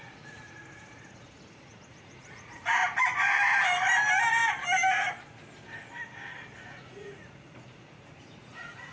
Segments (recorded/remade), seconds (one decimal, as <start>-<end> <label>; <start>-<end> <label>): 0.0-2.8 remade; 2.8-6.7 recorded; 6.7-8.9 remade